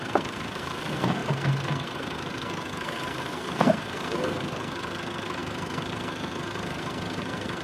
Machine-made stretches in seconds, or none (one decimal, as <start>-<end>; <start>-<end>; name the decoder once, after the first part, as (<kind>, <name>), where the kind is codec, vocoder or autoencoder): 0.0-7.6 (codec, SNAC)